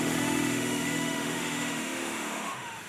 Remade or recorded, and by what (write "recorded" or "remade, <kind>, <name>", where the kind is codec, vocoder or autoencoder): remade, autoencoder, DAC-VAE